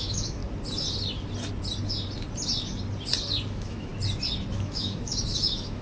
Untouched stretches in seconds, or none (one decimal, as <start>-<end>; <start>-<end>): 0.4-3.5; 3.9-4.5